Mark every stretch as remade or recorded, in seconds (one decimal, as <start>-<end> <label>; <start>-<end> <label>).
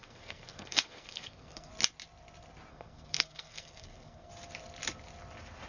0.0-1.7 remade; 1.7-2.7 recorded; 2.7-4.3 remade; 4.3-5.7 recorded